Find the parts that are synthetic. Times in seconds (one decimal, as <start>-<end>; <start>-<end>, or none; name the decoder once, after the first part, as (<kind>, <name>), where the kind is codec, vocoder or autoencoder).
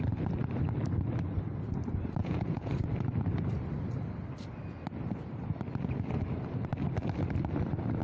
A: 2.2-2.8 (vocoder, Vocos)